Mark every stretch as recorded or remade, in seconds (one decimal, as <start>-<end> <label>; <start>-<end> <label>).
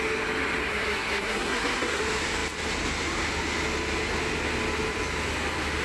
0.0-0.6 recorded; 0.6-2.0 remade; 2.0-5.8 recorded